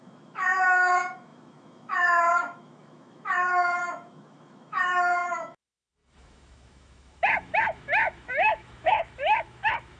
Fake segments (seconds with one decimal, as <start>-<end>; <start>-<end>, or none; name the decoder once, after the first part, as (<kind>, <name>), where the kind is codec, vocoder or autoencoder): 0.0-10.0 (autoencoder, DAC-VAE)